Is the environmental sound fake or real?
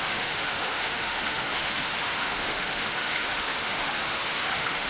fake